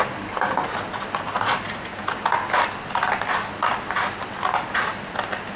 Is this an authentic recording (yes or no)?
yes